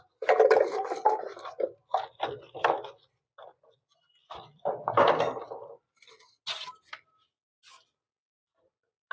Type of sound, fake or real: real